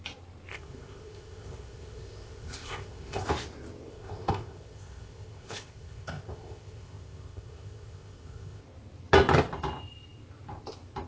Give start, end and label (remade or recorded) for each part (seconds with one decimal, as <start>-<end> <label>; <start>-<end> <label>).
0.0-0.5 recorded; 0.5-3.3 remade; 3.3-3.9 recorded; 3.9-8.6 remade; 8.6-11.1 recorded